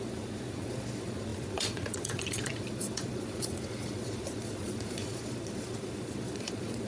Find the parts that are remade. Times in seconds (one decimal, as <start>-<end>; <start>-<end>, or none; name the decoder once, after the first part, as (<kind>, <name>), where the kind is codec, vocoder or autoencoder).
0.0-6.9 (vocoder, Vocos)